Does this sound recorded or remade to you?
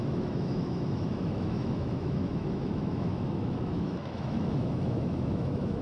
remade